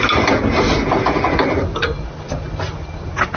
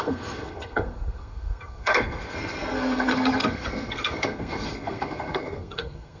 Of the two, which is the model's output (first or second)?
second